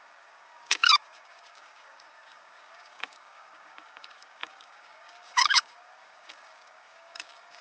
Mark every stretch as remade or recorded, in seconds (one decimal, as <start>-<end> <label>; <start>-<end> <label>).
0.0-7.6 remade

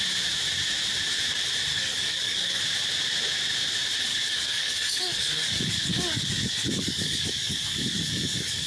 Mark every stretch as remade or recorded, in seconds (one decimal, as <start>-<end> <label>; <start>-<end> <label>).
0.0-1.7 recorded; 1.7-2.6 remade; 2.6-4.1 recorded; 4.1-8.7 remade

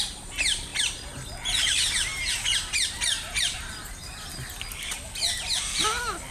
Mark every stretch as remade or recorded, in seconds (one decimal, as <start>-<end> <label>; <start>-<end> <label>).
0.0-6.3 recorded